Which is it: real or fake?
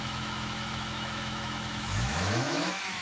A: fake